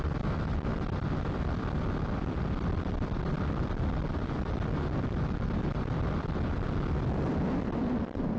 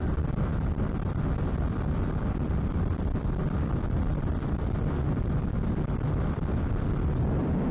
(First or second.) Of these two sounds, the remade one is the first